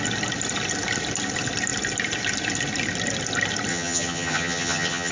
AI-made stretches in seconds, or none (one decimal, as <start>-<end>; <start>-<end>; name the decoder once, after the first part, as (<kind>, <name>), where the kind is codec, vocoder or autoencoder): 3.7-5.1 (vocoder, HiFi-GAN)